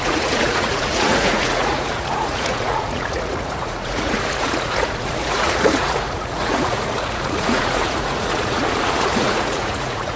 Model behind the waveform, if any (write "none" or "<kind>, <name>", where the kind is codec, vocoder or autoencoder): vocoder, Vocos